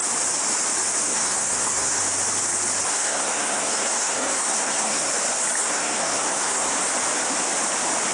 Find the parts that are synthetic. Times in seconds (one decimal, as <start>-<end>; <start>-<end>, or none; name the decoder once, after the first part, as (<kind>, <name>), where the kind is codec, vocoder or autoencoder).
1.0-2.0 (codec, SNAC); 2.9-5.1; 5.6-6.7